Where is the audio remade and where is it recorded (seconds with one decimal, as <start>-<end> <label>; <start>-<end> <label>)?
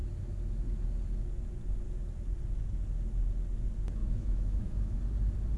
0.0-4.0 recorded; 4.0-5.0 remade; 5.0-5.6 recorded